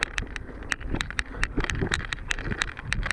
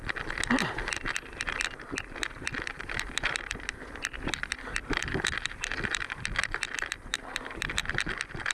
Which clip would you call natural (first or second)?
second